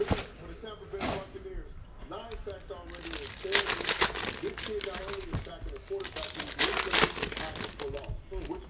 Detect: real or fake real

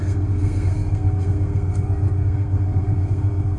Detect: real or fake fake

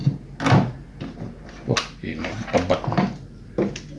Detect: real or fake real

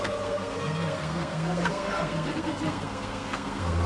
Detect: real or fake fake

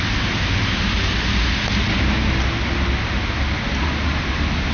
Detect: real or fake real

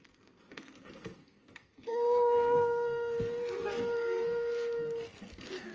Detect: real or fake fake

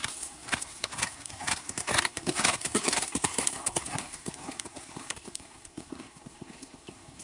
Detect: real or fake fake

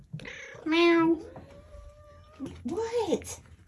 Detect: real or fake real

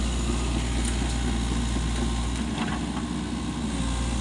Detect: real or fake real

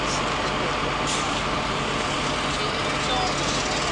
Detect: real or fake real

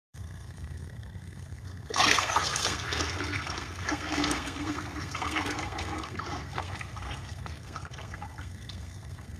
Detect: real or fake fake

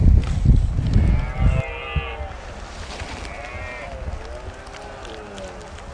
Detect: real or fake real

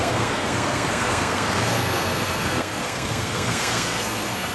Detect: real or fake fake